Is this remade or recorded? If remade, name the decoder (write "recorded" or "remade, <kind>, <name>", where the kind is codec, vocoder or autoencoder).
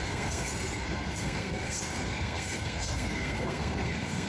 remade, codec, SNAC